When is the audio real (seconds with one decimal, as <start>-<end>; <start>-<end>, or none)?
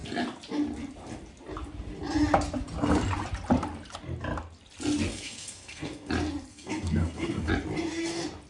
0.0-5.1; 6.1-6.5; 7.5-8.5